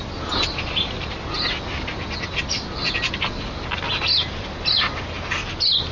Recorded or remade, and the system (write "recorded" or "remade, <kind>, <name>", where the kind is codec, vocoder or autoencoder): recorded